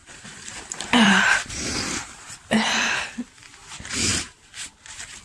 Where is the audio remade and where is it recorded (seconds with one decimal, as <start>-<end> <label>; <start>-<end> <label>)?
0.0-3.1 remade; 3.1-4.1 recorded; 4.1-4.8 remade; 4.8-5.2 recorded